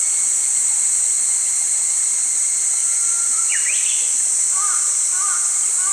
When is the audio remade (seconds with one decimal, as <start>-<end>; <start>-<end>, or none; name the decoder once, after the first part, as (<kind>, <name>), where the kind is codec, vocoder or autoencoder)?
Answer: 2.8-4.2 (vocoder, Vocos)